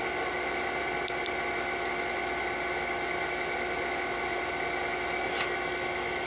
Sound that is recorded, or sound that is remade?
recorded